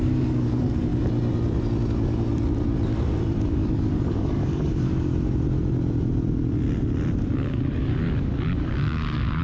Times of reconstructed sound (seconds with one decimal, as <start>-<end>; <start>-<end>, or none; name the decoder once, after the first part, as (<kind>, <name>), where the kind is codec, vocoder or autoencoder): 0.0-0.9 (codec, DAC); 3.5-5.1; 7.3-9.4